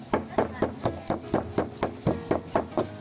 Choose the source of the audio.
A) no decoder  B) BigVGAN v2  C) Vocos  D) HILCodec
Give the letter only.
A